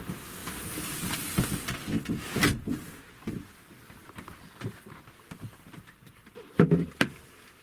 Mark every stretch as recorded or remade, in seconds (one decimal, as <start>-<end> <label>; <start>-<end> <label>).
0.0-2.4 recorded; 2.4-5.0 remade; 5.0-7.6 recorded